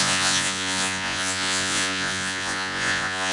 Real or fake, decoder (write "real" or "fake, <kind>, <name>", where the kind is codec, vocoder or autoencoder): fake, vocoder, Vocos